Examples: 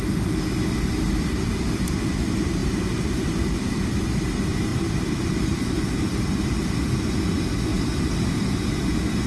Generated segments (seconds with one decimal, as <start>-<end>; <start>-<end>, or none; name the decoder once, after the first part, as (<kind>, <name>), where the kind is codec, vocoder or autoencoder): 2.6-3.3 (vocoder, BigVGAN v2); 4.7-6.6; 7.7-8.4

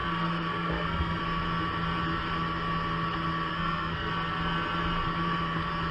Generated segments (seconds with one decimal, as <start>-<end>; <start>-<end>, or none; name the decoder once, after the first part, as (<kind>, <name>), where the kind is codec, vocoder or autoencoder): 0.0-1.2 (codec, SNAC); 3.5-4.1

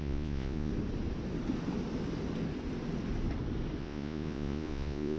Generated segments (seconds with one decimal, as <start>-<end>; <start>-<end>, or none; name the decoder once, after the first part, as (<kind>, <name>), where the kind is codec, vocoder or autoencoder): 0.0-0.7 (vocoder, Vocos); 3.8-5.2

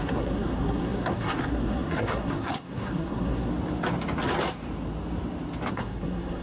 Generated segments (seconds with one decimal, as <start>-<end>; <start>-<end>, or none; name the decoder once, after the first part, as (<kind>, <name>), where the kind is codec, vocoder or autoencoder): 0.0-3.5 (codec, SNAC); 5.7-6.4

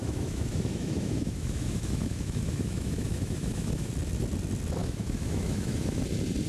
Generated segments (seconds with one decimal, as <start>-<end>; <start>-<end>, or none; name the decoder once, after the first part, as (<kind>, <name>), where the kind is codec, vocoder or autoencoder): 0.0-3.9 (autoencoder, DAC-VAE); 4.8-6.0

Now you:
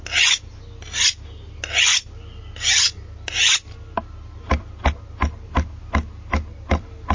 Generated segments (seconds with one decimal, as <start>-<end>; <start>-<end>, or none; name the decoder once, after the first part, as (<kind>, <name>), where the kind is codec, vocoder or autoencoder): none

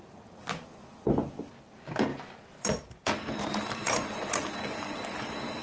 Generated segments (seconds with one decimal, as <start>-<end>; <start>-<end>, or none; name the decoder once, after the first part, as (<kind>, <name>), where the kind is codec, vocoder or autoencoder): 2.1-5.6 (vocoder, BigVGAN v2)

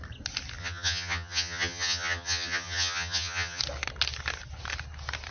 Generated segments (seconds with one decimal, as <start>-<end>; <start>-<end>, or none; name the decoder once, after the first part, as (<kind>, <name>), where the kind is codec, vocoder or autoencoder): 0.6-3.6 (vocoder, HiFi-GAN)